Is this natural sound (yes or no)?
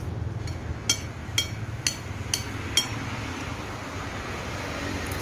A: yes